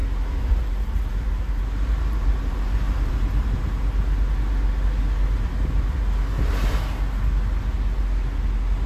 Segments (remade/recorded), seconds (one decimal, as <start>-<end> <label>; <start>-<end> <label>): 0.0-3.1 remade; 3.1-8.9 recorded